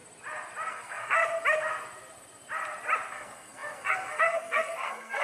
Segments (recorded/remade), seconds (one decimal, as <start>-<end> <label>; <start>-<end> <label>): 0.0-0.7 recorded; 0.7-1.2 remade; 1.2-3.1 recorded; 3.1-5.2 remade